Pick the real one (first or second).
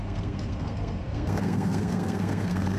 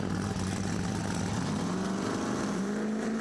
second